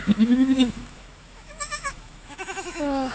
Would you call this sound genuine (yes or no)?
no